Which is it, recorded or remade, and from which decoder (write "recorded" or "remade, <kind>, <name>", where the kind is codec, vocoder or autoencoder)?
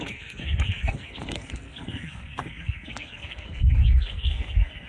remade, codec, SNAC